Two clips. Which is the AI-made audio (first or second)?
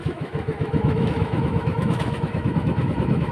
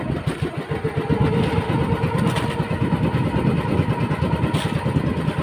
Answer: first